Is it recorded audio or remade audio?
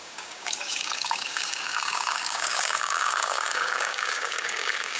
remade